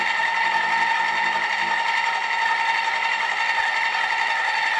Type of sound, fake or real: real